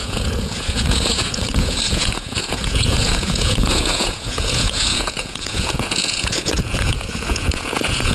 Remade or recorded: remade